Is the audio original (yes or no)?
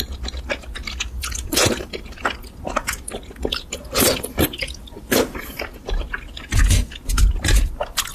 yes